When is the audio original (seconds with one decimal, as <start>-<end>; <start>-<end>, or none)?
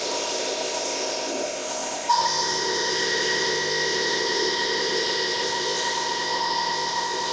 none